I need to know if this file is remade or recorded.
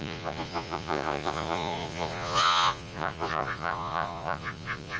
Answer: remade